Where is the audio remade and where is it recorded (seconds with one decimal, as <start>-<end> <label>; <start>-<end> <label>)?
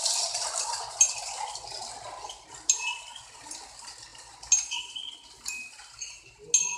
0.0-6.8 recorded